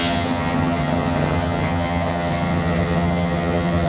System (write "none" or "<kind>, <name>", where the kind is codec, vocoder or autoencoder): vocoder, HiFi-GAN